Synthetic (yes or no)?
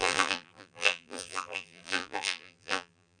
yes